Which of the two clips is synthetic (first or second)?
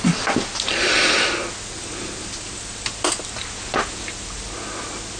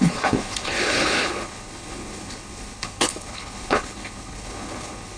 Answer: second